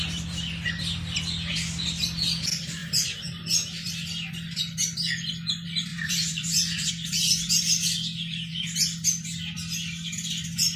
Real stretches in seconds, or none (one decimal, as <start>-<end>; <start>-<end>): 0.0-5.9; 6.9-10.8